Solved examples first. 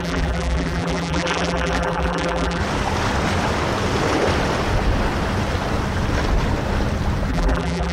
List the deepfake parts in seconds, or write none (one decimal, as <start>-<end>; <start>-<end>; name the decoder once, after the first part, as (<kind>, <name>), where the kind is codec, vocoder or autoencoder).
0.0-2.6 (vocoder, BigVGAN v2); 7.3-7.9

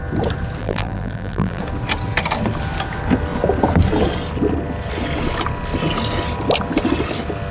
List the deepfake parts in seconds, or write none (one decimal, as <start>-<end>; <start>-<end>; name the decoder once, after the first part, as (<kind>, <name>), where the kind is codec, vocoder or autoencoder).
0.6-1.6 (vocoder, BigVGAN v2)

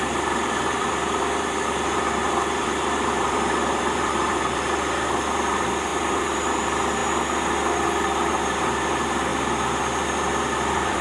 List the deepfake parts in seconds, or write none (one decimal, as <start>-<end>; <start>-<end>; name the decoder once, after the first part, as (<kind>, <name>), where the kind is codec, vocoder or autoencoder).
0.0-7.0 (vocoder, BigVGAN v2); 8.3-9.3; 9.8-11.0